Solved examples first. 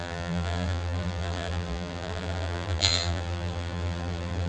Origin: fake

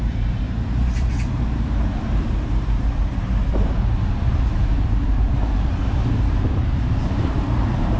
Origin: fake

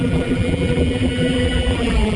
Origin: fake